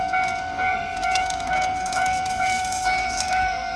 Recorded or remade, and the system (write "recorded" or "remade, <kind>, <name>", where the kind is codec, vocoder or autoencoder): remade, codec, SNAC